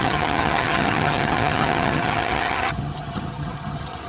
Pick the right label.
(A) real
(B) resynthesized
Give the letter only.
B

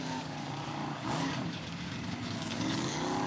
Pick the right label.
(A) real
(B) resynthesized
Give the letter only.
B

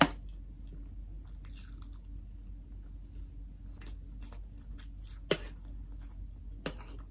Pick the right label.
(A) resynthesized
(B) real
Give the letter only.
B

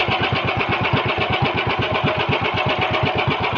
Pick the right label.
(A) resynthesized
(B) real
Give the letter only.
B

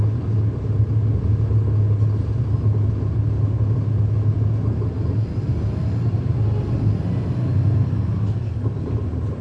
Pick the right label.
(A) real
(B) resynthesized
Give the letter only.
A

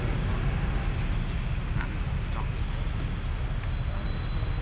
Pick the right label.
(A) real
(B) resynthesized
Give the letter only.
A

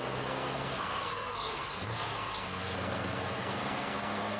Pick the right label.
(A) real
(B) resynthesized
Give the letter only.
B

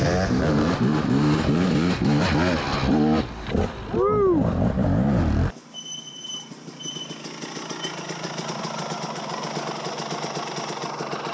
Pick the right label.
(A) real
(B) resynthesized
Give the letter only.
A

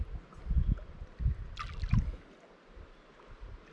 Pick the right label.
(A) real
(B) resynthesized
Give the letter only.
A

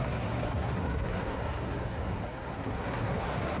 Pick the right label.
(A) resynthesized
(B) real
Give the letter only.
A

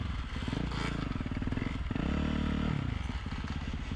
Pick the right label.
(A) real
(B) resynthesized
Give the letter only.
A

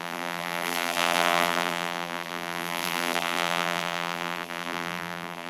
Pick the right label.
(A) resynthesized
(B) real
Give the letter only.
A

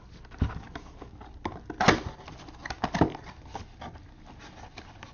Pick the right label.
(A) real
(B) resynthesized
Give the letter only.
A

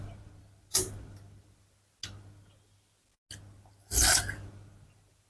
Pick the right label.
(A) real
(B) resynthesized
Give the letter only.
A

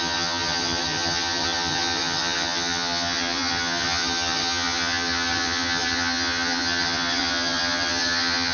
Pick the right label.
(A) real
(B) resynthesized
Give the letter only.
B